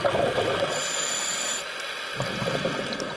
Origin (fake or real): real